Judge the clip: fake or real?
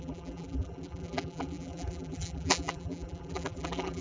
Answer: fake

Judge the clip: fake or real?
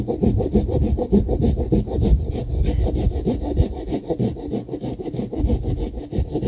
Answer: real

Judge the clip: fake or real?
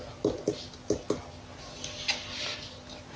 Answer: real